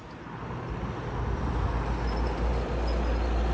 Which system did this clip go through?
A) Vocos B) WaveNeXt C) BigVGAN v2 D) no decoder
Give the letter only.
D